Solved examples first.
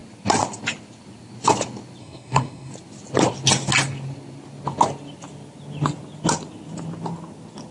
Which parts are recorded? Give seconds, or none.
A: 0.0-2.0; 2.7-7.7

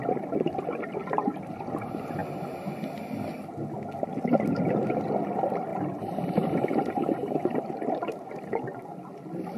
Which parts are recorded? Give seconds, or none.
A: 0.0-1.0; 1.5-9.6